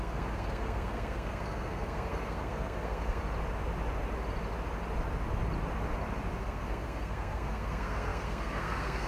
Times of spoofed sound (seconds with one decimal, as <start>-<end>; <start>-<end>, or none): 0.0-3.2; 6.4-9.1